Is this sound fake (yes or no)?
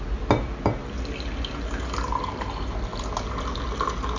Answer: no